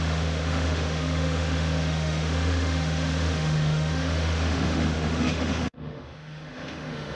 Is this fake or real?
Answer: fake